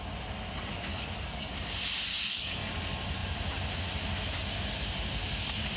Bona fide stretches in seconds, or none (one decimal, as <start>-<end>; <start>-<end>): 0.0-0.9; 1.5-2.1; 2.7-5.8